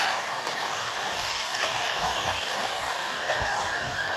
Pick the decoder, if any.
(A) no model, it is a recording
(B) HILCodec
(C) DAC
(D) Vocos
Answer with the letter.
C